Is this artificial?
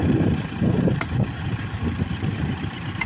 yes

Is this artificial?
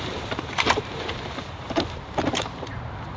yes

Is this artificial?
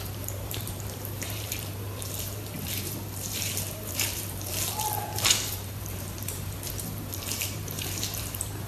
yes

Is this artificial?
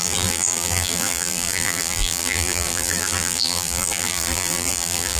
yes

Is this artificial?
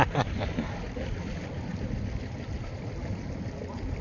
no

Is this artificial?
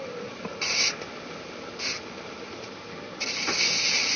no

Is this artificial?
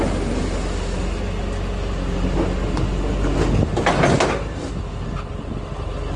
no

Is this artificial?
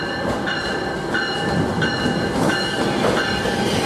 no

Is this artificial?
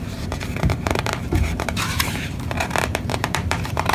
yes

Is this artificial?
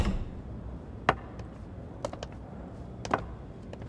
no